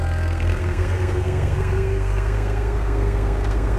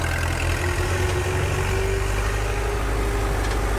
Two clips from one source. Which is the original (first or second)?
second